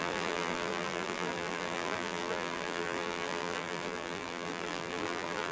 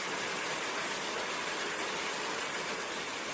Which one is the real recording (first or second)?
second